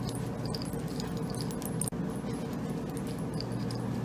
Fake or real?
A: real